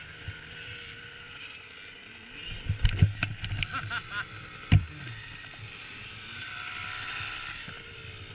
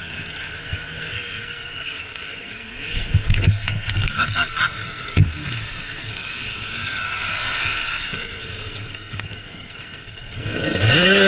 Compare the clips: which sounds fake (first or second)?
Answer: second